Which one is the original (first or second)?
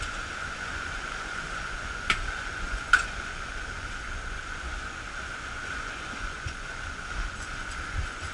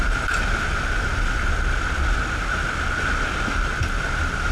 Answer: second